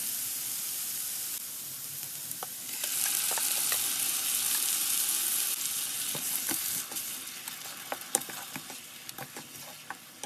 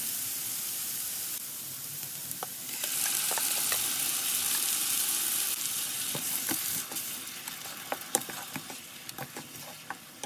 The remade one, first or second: second